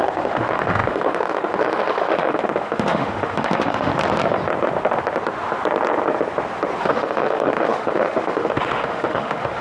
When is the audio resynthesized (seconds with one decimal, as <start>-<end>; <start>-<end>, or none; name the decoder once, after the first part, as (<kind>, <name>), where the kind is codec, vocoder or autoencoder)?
0.0-3.9 (autoencoder, DAC-VAE); 6.8-9.6